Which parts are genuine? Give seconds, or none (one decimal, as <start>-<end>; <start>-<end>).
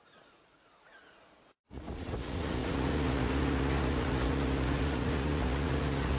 none